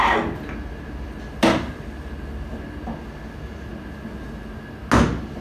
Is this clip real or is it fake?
real